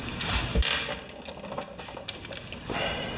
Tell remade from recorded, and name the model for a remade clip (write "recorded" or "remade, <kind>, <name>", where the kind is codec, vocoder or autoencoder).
recorded